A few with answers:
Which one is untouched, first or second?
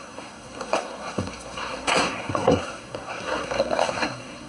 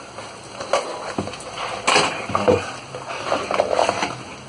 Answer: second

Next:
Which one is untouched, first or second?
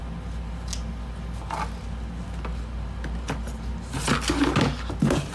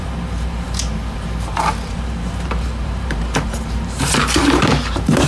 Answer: first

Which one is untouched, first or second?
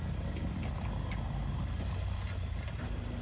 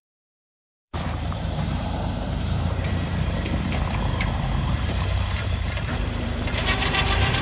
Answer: first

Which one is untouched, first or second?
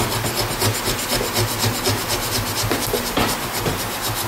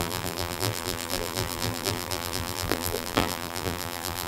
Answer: first